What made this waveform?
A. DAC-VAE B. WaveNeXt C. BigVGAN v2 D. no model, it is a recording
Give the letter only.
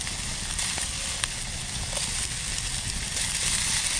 D